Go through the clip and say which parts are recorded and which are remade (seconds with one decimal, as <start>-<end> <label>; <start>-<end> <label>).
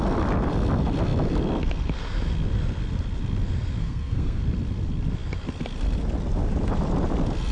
0.0-3.8 recorded; 3.8-4.4 remade; 4.4-7.5 recorded